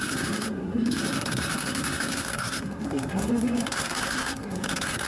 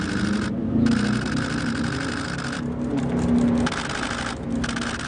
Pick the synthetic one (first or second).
first